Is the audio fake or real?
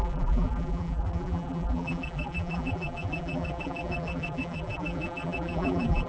fake